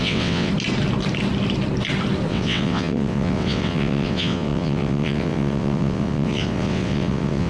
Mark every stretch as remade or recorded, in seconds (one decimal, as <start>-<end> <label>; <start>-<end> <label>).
0.0-0.5 remade; 0.5-2.3 recorded; 2.3-7.5 remade